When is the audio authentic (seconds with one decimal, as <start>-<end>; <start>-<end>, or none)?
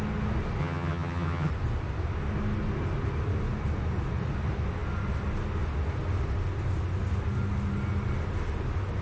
0.0-0.6; 1.5-9.0